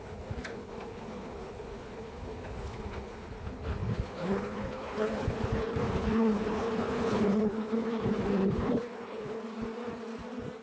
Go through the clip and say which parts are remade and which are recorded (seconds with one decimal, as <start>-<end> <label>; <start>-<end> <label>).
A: 0.0-9.4 remade; 9.4-10.6 recorded